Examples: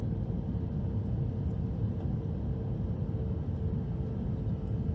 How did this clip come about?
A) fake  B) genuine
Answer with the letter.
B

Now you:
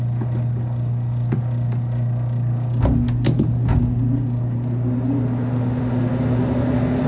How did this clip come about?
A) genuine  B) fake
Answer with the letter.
A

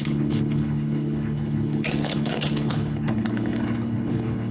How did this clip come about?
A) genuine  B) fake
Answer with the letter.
B